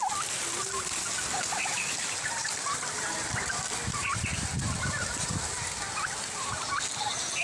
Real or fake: real